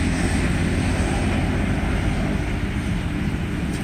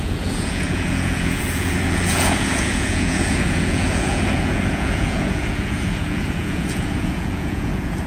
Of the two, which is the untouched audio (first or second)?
first